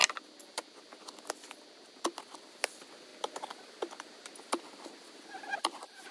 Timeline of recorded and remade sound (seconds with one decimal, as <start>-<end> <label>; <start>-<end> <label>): 0.0-6.1 recorded